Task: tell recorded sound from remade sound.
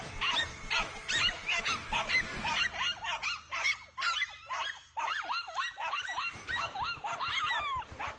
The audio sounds recorded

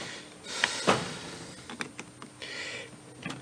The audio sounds recorded